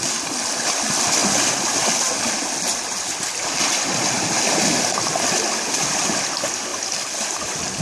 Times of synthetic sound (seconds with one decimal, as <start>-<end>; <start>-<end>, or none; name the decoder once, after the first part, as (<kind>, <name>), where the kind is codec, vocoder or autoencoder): none